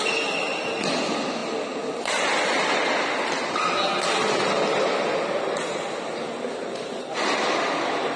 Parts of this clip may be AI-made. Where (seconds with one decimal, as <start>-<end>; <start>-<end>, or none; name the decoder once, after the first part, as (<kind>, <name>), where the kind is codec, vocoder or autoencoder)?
none